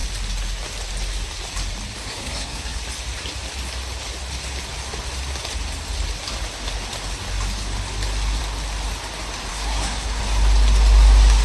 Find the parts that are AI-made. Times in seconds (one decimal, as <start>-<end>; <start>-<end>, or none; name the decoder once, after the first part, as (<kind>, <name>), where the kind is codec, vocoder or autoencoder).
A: 2.0-2.8 (codec, SNAC); 9.5-10.2